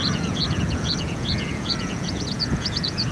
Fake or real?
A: fake